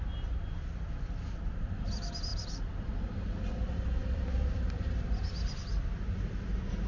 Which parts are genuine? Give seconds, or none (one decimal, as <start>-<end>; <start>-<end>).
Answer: 0.0-2.3; 3.4-4.0; 5.9-6.9